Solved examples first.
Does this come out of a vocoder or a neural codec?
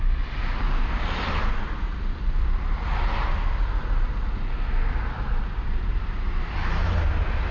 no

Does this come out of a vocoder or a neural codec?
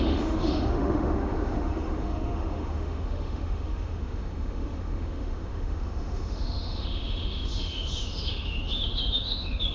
yes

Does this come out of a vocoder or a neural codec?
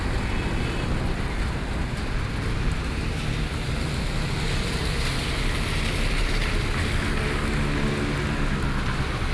no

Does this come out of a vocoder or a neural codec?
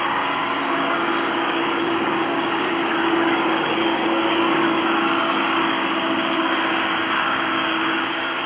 yes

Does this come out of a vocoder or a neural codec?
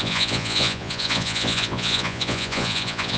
yes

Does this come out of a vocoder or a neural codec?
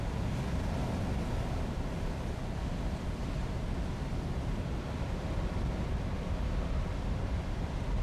no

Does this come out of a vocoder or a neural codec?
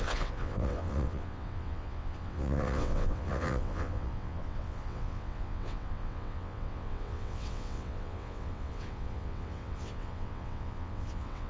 yes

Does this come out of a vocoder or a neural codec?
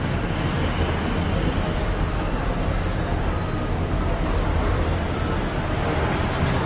no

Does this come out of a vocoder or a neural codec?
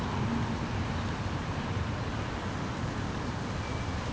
no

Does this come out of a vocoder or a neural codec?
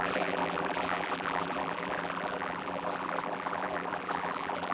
yes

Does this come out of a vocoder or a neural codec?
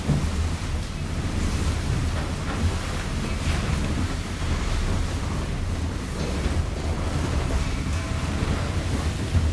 no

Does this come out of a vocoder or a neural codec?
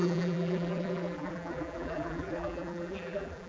yes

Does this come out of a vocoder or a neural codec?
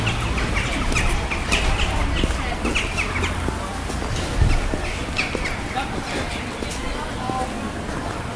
no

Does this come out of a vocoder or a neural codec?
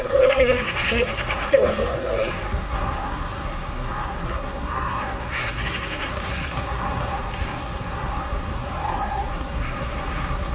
yes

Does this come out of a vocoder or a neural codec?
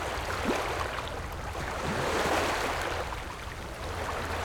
no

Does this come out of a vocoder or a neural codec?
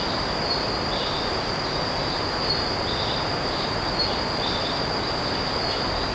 no